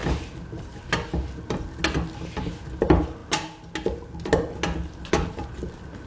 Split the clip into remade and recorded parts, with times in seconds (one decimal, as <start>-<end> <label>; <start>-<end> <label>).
0.0-6.1 recorded